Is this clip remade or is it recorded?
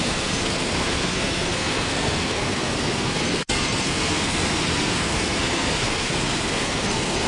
remade